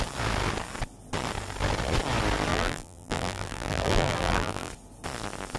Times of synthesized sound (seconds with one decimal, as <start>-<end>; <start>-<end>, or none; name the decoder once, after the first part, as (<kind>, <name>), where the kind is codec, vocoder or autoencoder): 2.5-4.7 (vocoder, BigVGAN v2)